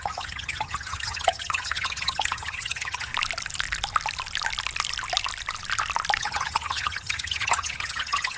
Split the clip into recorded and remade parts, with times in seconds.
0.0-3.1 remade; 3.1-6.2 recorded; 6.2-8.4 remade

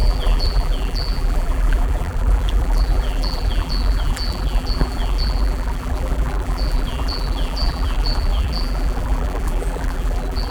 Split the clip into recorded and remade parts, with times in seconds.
0.0-10.5 remade